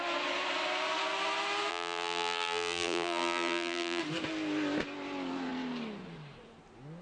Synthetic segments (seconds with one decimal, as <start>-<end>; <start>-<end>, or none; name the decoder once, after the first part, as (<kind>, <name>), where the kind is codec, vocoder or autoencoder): 1.7-4.0 (vocoder, BigVGAN v2)